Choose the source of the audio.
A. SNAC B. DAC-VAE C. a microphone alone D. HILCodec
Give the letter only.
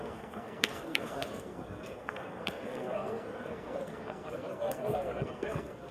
A